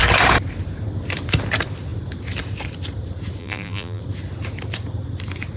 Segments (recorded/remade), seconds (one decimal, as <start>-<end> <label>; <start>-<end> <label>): 0.0-3.4 recorded; 3.4-4.0 remade; 4.0-5.6 recorded